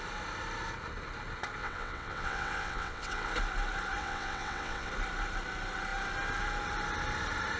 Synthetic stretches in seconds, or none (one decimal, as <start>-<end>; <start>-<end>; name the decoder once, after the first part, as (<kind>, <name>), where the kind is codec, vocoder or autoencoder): 1.6-3.3 (vocoder, WaveNeXt); 4.0-4.9